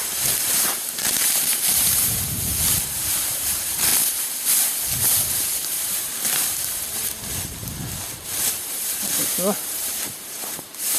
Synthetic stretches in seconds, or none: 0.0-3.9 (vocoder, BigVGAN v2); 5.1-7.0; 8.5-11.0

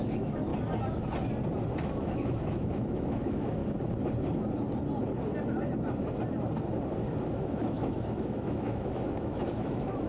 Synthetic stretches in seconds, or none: 0.0-0.5 (autoencoder, DAC-VAE); 1.7-3.6; 7.3-10.1